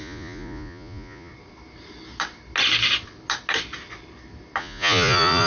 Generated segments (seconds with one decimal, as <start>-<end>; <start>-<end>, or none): 0.0-1.3; 4.6-5.5